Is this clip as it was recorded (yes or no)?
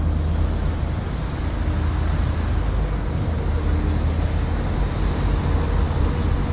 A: yes